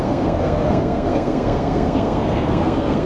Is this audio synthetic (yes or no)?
yes